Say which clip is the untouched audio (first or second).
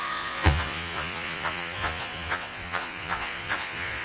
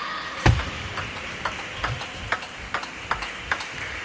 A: second